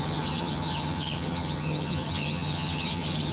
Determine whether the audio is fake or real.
fake